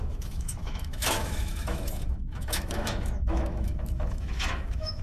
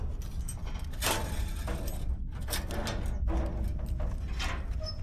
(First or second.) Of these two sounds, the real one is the second